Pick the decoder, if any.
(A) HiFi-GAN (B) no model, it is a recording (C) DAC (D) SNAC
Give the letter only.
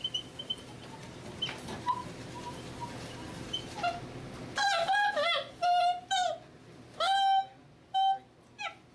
B